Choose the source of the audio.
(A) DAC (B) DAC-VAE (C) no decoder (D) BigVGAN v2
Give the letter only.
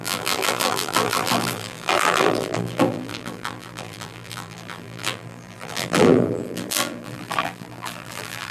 D